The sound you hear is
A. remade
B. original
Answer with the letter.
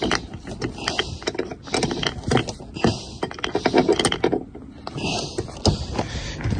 B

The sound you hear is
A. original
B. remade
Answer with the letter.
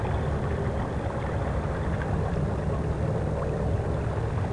A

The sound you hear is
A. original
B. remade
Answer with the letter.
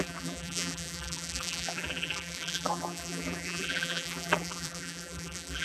B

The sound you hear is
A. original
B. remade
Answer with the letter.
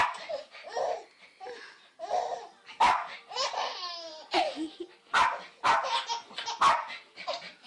A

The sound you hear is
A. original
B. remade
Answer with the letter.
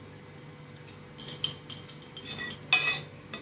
A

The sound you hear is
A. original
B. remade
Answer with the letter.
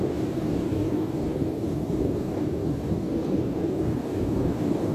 B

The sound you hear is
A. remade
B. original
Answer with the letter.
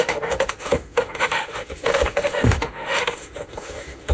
A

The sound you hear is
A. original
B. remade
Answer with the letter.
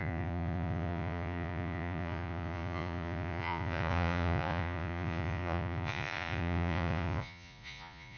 B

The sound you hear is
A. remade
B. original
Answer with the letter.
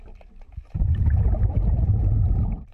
B